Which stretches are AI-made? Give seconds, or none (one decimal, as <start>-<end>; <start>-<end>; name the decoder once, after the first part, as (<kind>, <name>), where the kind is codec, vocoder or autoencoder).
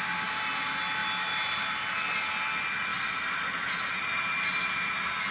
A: 2.9-3.9 (vocoder, BigVGAN v2)